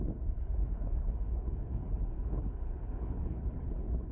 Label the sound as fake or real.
fake